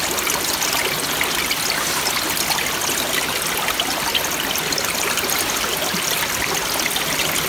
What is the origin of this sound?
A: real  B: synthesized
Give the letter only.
A